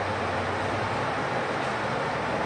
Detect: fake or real real